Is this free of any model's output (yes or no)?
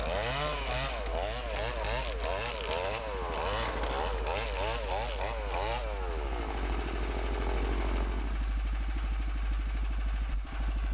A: yes